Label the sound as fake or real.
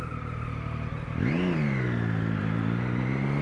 real